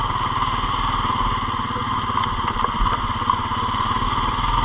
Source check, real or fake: real